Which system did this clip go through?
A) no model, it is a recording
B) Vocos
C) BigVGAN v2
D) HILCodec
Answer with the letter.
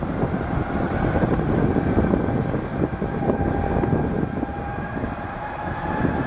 A